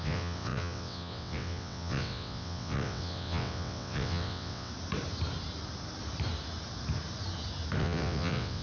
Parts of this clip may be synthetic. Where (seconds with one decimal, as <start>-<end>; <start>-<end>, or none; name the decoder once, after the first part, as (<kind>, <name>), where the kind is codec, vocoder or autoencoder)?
0.0-4.7 (vocoder, WaveNeXt); 7.8-8.6